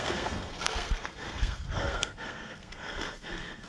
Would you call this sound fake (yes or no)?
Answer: yes